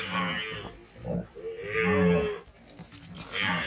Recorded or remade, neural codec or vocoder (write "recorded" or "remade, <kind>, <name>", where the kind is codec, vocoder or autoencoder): recorded